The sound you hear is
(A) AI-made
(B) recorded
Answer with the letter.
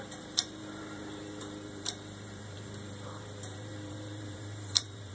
A